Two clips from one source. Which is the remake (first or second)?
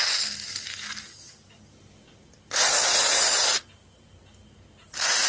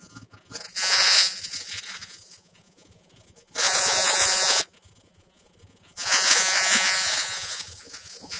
second